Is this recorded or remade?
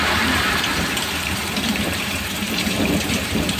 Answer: remade